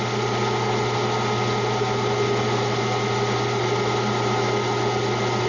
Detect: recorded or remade recorded